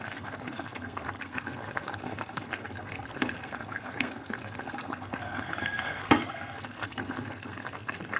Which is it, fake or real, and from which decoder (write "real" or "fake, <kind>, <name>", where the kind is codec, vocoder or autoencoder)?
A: fake, codec, SNAC